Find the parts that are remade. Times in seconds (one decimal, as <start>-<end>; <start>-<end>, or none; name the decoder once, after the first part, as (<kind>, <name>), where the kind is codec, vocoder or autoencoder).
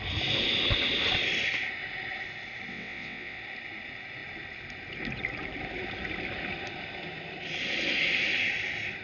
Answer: 2.7-3.4 (vocoder, WaveNeXt)